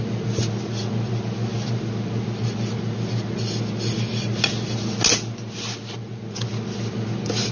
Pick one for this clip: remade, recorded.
recorded